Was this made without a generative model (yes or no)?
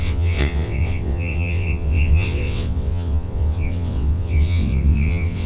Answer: no